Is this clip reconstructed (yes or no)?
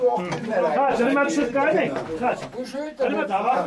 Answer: yes